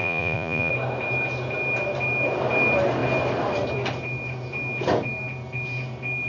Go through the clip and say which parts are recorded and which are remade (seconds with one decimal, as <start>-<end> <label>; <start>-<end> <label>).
0.0-0.7 remade; 0.7-6.3 recorded